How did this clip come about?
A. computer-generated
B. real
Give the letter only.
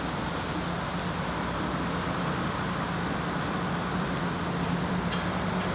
B